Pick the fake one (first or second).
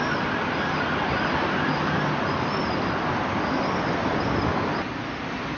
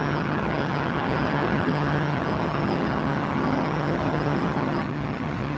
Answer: second